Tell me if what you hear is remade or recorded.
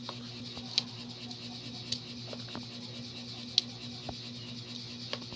recorded